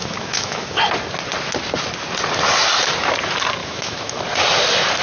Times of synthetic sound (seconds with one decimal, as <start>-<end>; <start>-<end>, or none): 0.0-0.8; 3.6-4.2